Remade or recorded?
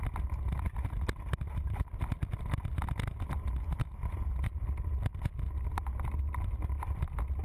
recorded